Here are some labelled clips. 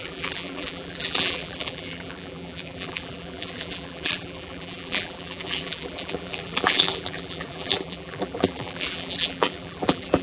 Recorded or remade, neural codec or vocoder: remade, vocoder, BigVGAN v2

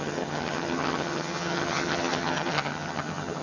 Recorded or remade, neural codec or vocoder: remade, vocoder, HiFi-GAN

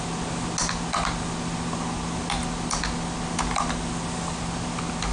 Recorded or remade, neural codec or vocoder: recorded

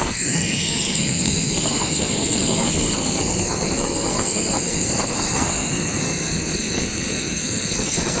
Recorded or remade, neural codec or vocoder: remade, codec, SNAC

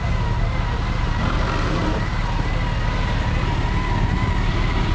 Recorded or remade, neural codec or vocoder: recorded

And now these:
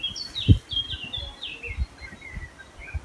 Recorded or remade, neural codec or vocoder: remade, vocoder, BigVGAN v2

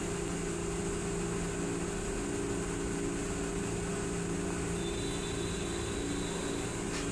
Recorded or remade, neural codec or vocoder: recorded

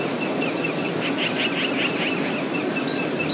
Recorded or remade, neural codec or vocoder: recorded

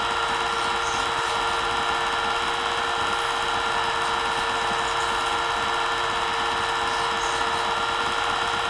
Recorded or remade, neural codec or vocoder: recorded